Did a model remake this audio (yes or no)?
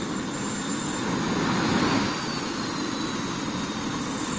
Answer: no